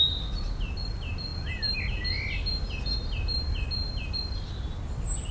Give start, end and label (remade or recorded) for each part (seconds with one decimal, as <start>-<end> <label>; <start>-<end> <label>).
0.0-5.3 recorded